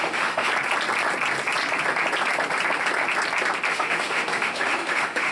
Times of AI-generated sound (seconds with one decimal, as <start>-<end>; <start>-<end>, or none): 0.0-0.5; 3.7-5.3